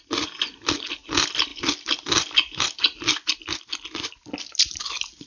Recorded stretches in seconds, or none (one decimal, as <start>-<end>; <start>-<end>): 0.0-5.3